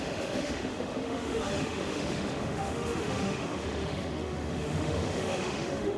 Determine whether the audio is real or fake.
fake